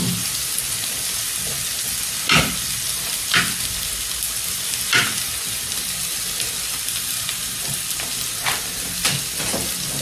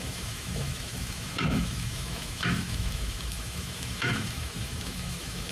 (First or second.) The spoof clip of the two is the second